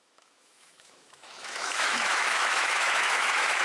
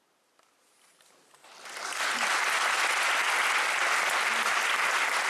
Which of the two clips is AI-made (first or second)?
first